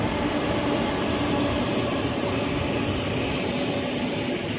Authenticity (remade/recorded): recorded